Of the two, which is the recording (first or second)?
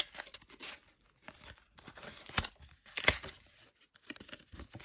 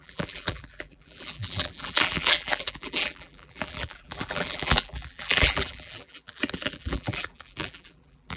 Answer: first